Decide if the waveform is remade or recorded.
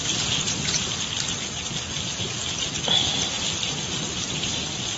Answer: recorded